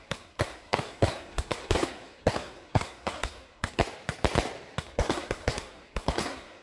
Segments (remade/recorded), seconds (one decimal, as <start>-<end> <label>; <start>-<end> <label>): 0.0-3.8 remade; 3.8-4.8 recorded; 4.8-6.6 remade

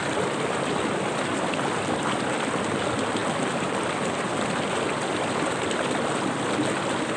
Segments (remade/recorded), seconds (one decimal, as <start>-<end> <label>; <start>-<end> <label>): 0.0-7.2 recorded

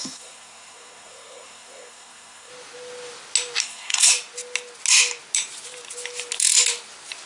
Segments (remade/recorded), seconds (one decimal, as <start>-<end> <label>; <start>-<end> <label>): 0.0-2.5 remade; 2.5-3.6 recorded; 3.6-4.1 remade; 4.1-7.3 recorded

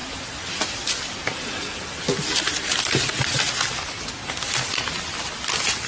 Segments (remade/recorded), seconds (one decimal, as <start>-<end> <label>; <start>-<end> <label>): 0.0-5.9 recorded